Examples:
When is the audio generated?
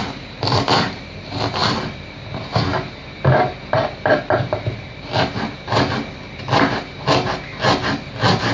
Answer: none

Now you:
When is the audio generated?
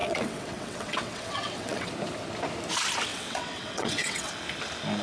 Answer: 0.0-1.9 (vocoder, WaveNeXt); 3.1-4.3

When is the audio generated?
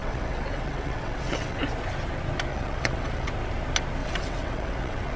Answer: 0.0-1.6 (vocoder, WaveNeXt); 2.5-3.3; 4.0-5.2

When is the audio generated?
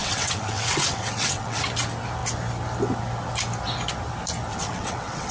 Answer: 0.0-1.6 (vocoder, WaveNeXt); 4.5-5.3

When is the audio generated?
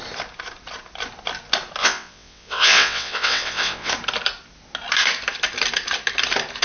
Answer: 1.8-3.9 (vocoder, WaveNeXt)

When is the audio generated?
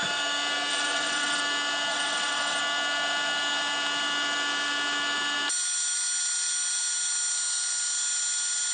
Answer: 0.7-1.4 (vocoder, WaveNeXt); 1.9-2.6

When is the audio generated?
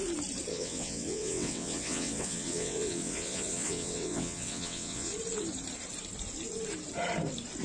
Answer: 0.5-5.1 (vocoder, WaveNeXt)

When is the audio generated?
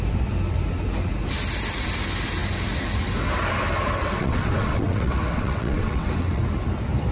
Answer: 4.0-6.4 (vocoder, WaveNeXt)